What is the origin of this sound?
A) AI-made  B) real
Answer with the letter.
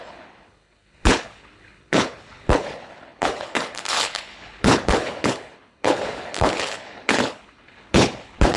A